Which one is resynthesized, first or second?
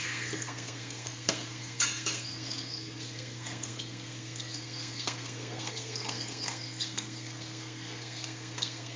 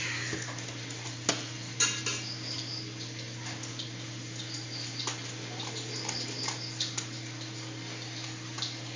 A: first